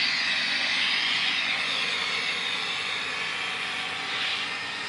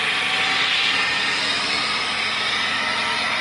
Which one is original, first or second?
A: second